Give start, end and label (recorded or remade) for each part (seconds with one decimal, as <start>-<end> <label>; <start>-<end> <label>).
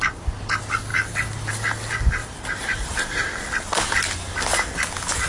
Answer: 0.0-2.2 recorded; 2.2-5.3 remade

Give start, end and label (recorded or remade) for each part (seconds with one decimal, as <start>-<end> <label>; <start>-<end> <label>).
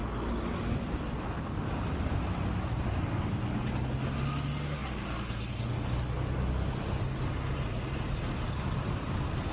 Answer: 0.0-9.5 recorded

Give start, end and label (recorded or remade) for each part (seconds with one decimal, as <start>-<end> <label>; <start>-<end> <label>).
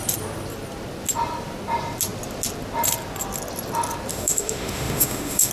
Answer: 0.0-4.1 recorded; 4.1-5.5 remade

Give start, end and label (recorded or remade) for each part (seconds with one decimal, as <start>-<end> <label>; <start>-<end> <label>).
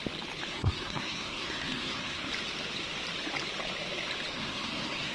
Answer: 0.0-0.5 recorded; 0.5-2.3 remade; 2.3-4.3 recorded; 4.3-5.1 remade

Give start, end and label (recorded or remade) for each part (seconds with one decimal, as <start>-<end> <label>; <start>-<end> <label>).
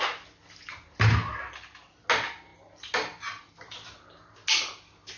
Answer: 0.0-5.2 recorded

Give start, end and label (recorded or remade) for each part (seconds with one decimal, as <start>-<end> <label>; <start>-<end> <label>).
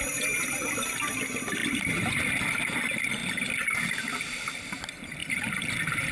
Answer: 0.0-1.6 recorded; 1.6-2.4 remade; 2.4-5.2 recorded; 5.2-6.1 remade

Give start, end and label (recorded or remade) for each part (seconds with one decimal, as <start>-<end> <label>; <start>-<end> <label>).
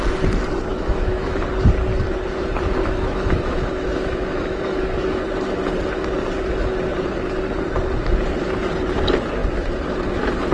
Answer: 0.0-0.7 recorded; 0.7-1.5 remade; 1.5-2.8 recorded; 2.8-5.2 remade; 5.2-10.5 recorded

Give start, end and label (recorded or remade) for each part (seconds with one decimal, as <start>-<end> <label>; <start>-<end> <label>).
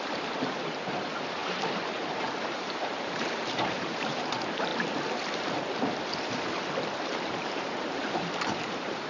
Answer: 0.0-4.7 remade; 4.7-7.0 recorded; 7.0-9.1 remade